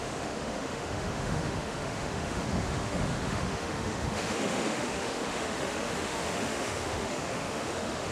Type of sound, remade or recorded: remade